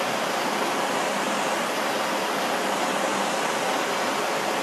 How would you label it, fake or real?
real